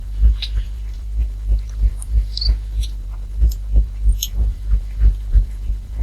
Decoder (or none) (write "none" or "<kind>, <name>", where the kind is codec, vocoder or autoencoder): vocoder, BigVGAN v2